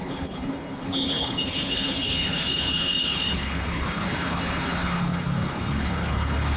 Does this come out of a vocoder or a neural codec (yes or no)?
yes